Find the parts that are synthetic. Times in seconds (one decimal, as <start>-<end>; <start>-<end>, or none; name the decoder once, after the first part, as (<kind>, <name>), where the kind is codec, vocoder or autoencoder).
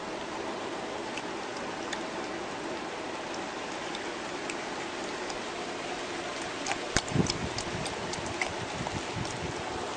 none